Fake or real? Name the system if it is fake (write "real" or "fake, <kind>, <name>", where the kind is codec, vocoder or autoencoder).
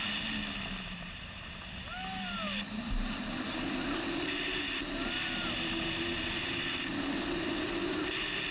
real